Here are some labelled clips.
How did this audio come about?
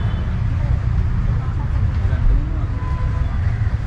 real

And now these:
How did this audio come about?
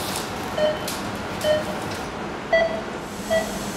real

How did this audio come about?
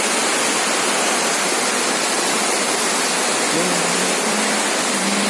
real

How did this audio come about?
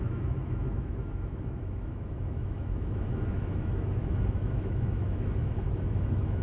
fake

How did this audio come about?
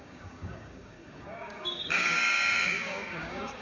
fake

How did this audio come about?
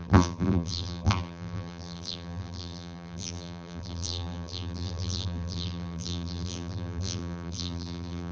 fake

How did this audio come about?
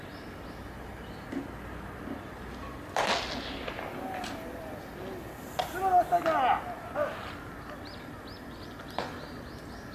real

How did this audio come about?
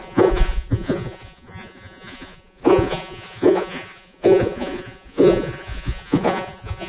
fake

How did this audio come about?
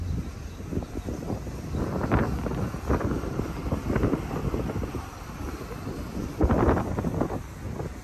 real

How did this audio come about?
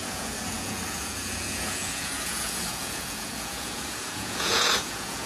fake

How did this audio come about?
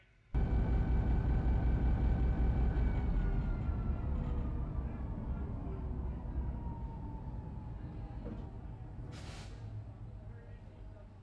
real